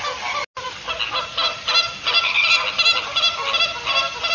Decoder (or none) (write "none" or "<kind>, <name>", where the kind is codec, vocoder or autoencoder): none